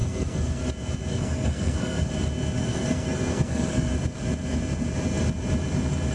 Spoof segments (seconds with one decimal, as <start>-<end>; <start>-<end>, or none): 0.0-0.6; 1.1-2.1; 2.6-3.9